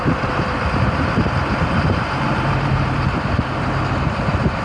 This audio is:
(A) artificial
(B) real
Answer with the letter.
A